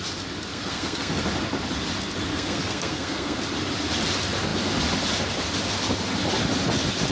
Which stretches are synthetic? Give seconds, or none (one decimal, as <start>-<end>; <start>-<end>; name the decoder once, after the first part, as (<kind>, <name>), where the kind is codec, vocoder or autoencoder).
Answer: 0.5-1.2 (codec, SNAC); 2.3-3.4